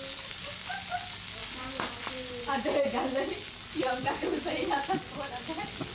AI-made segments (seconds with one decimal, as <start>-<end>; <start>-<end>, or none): none